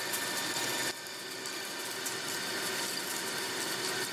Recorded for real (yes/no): yes